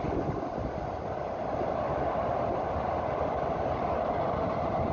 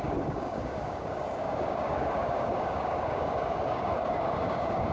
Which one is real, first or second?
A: first